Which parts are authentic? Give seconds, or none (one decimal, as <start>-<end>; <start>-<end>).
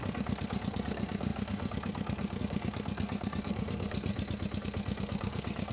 4.1-4.6